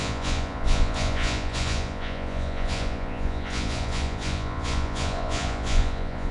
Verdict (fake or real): fake